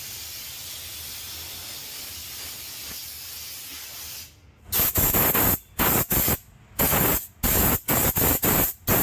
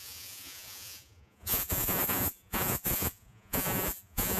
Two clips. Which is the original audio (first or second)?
first